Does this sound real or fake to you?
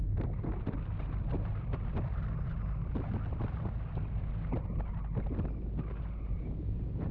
real